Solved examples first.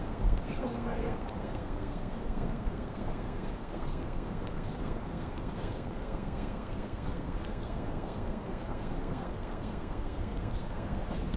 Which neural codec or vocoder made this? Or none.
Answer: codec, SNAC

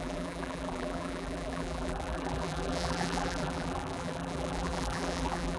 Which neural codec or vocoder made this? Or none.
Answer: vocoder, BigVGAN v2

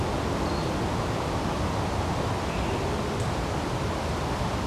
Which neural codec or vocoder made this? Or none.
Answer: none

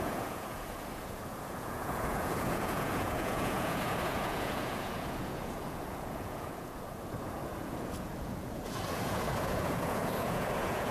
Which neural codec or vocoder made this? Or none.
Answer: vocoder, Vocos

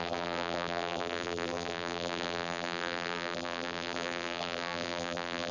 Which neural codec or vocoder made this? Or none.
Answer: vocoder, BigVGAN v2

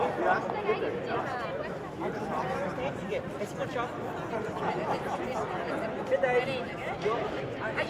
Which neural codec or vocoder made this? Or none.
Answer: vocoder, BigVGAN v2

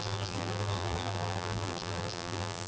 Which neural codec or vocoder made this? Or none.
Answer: vocoder, BigVGAN v2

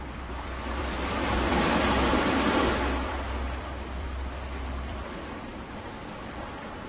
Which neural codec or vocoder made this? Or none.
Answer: vocoder, BigVGAN v2